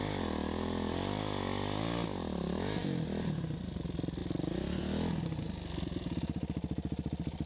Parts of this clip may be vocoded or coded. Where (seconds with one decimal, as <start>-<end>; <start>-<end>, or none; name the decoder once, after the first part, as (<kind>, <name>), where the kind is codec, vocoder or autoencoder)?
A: none